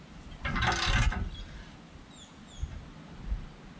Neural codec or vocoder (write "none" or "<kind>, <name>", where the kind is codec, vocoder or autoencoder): none